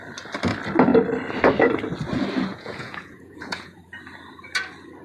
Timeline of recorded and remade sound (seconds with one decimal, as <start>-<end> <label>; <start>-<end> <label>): 0.0-2.5 recorded; 2.5-3.8 remade; 3.8-5.0 recorded